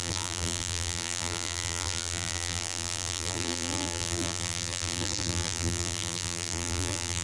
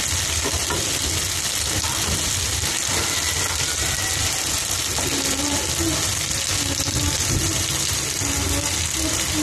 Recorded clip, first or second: second